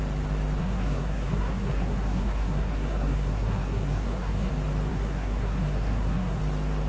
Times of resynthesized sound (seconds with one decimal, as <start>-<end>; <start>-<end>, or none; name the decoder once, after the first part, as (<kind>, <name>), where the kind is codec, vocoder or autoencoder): 0.6-4.5 (codec, SNAC); 4.9-6.4